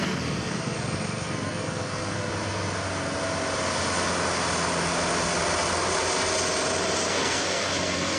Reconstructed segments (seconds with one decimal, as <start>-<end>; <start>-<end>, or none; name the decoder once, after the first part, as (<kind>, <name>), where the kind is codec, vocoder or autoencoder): 0.0-2.3 (codec, SNAC); 7.1-8.2